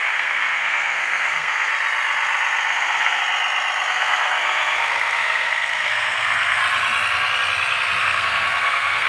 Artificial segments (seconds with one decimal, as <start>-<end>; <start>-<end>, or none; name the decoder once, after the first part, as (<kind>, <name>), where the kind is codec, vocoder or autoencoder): 0.0-1.7 (codec, SNAC); 2.7-3.2; 3.9-6.6; 8.0-9.1